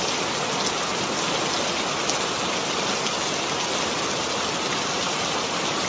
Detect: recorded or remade recorded